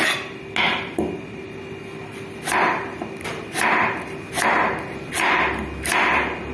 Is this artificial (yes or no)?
no